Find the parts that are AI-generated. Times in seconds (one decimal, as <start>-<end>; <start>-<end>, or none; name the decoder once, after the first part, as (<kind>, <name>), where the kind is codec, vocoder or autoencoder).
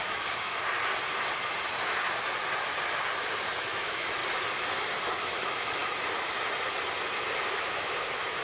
0.0-0.5 (autoencoder, DAC-VAE); 3.6-4.2; 5.2-5.8; 7.5-8.4